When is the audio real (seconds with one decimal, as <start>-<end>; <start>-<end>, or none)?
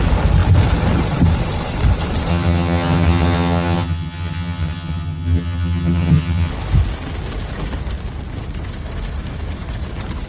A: 0.0-2.3; 6.5-10.3